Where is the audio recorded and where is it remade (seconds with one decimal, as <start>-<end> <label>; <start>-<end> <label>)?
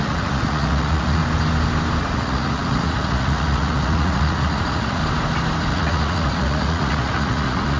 0.0-1.2 remade; 1.2-2.0 recorded; 2.0-5.0 remade; 5.0-5.7 recorded; 5.7-7.8 remade